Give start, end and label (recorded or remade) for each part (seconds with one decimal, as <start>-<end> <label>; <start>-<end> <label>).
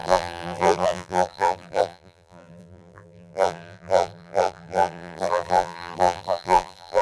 0.0-7.0 remade